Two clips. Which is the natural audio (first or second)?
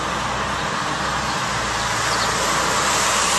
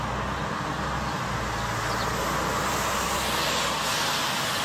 second